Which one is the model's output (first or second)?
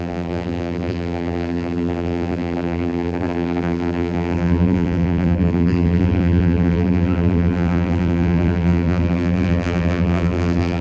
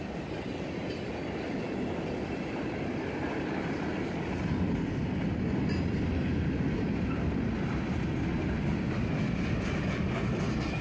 first